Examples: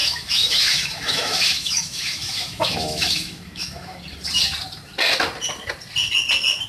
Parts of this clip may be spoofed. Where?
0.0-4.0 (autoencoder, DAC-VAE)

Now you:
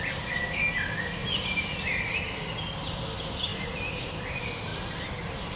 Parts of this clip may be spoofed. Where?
none

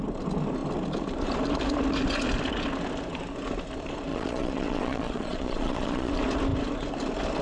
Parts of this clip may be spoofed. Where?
4.1-6.1 (vocoder, Vocos)

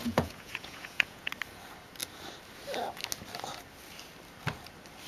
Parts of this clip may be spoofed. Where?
0.0-1.3 (vocoder, Vocos)

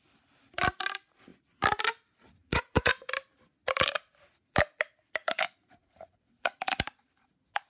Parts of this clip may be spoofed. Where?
2.2-3.1 (vocoder, Vocos); 5.2-6.6

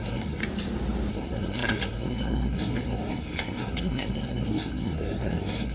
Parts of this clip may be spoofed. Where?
0.0-0.4 (codec, SNAC); 1.1-5.7

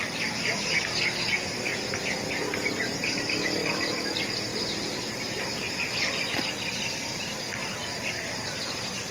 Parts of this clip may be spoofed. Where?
0.0-1.7 (vocoder, BigVGAN v2); 3.9-4.5; 5.1-9.1